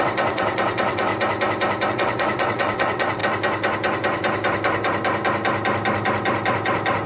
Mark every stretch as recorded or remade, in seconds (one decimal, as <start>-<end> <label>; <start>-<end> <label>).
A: 0.0-1.1 remade; 1.1-1.9 recorded; 1.9-3.2 remade; 3.2-7.1 recorded